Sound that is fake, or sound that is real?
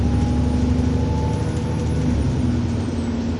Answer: real